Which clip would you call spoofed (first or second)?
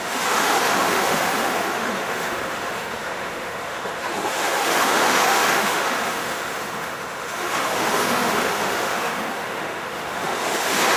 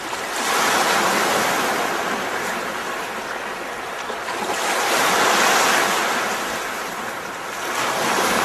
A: first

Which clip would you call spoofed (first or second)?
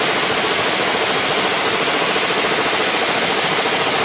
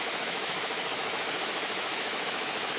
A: second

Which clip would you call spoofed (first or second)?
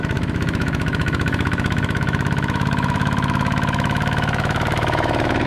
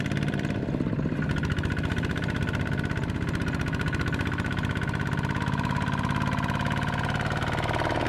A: first